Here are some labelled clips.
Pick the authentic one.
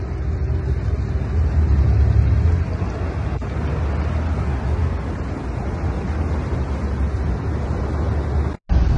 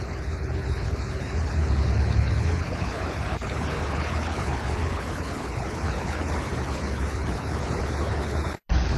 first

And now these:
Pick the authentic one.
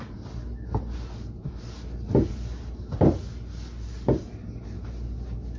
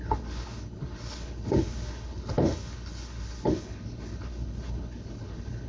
first